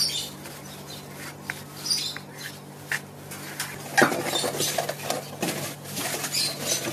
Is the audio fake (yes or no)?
no